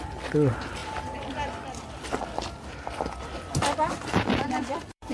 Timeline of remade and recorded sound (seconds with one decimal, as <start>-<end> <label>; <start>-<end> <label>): 0.0-0.8 recorded; 0.8-2.1 remade; 2.1-4.3 recorded; 4.3-5.1 remade